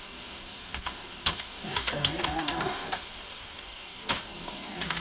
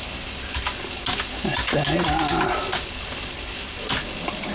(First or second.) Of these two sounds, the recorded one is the second